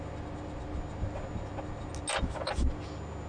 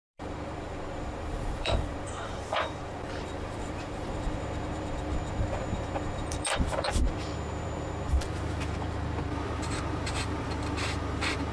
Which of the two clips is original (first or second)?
first